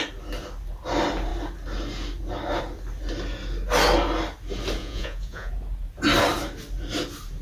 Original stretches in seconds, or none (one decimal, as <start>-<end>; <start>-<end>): 0.0-4.8; 5.5-7.4

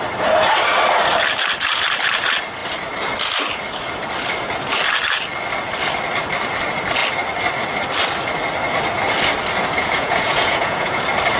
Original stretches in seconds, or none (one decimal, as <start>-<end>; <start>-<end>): 0.0-9.8; 11.0-11.4

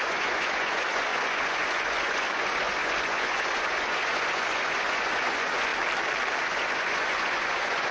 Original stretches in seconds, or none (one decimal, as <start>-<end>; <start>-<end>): 5.7-6.4

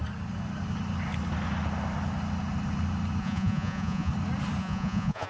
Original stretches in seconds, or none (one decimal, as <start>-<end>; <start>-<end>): 0.0-3.2; 4.1-4.6

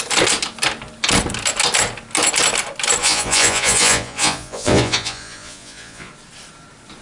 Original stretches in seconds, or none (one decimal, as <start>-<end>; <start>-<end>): 0.0-3.0; 6.1-7.0

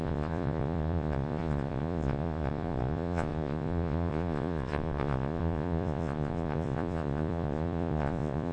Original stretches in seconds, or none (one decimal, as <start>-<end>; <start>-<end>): none

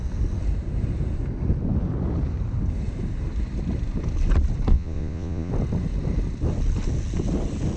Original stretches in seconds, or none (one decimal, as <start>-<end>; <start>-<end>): 0.0-4.7; 5.5-7.8

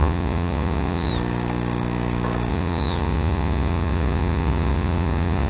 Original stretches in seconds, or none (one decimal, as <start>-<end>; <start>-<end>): 1.1-2.5